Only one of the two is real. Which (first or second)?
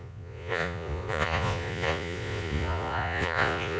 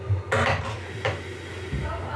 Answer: second